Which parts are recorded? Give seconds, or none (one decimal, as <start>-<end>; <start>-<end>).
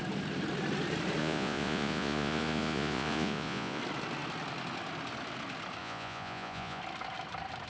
0.0-1.2; 3.8-5.8; 6.8-7.7